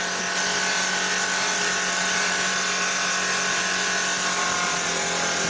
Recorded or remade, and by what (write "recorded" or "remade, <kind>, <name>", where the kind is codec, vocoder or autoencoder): recorded